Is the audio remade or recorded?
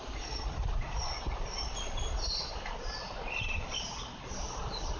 recorded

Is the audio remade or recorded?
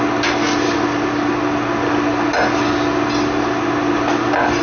recorded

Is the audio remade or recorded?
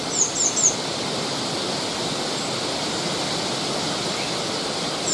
recorded